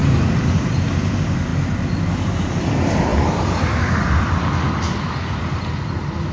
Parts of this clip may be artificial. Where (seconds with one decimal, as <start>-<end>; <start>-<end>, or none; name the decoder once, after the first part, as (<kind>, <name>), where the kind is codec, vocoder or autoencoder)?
0.5-1.5 (vocoder, BigVGAN v2); 2.1-6.3